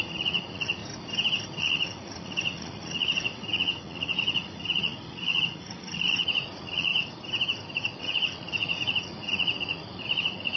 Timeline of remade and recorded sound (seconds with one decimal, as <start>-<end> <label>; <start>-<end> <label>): 0.0-0.8 remade; 0.8-1.6 recorded; 1.6-6.9 remade; 6.9-8.0 recorded; 8.0-10.6 remade

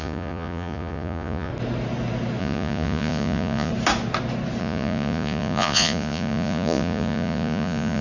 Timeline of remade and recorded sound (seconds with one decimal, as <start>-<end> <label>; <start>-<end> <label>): 0.0-1.5 remade; 1.5-2.4 recorded; 2.4-3.7 remade; 3.7-4.6 recorded; 4.6-8.0 remade

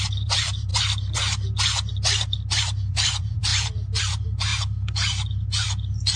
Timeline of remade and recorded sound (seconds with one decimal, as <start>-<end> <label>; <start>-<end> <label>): 0.0-0.7 remade; 0.7-2.6 recorded; 2.6-4.5 remade; 4.5-6.2 recorded

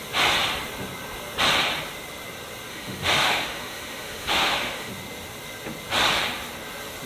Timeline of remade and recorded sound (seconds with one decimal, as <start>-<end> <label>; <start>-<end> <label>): 0.0-2.7 recorded; 2.7-4.9 remade; 4.9-7.1 recorded